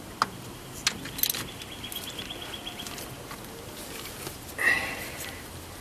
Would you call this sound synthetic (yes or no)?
no